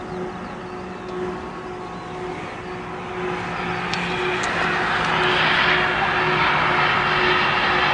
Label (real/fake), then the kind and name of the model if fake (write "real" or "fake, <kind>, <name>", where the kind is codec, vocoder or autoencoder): real